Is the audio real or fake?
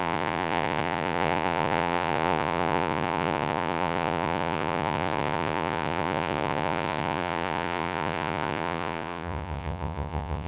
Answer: fake